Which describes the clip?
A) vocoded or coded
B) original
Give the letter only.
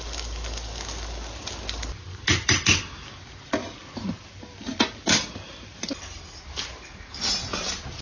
B